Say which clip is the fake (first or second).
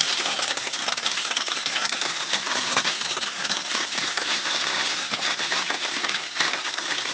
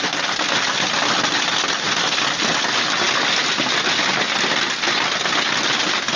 first